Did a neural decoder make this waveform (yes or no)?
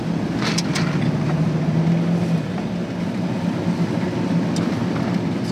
no